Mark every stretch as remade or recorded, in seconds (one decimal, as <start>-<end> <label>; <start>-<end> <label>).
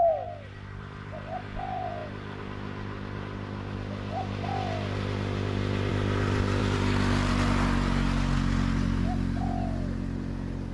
0.0-10.7 recorded